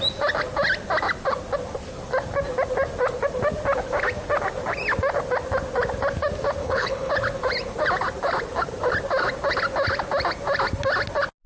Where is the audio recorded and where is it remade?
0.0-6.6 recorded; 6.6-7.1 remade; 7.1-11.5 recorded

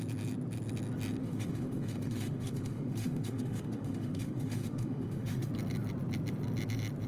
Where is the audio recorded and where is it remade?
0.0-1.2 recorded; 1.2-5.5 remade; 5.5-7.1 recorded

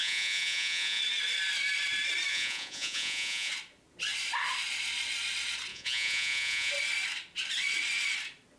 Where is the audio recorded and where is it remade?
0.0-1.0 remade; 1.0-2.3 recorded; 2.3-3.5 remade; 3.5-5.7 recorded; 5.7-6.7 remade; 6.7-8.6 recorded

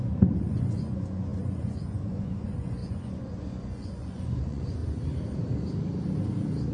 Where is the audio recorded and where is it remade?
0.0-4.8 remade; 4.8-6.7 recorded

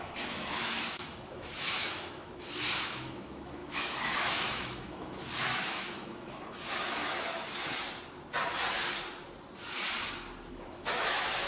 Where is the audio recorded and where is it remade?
0.0-7.7 remade; 7.7-10.5 recorded; 10.5-11.5 remade